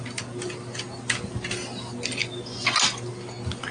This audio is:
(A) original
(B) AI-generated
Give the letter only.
A